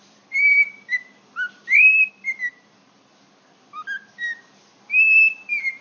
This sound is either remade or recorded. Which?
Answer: recorded